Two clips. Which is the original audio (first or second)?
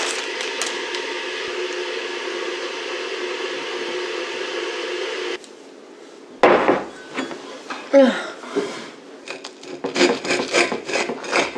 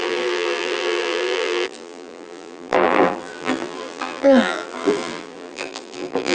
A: first